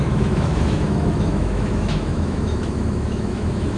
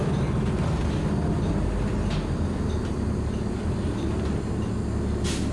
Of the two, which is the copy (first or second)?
first